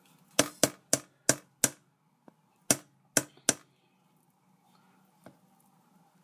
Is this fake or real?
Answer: real